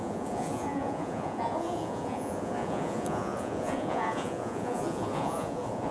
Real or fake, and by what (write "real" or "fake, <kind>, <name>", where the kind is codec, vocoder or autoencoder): fake, vocoder, Vocos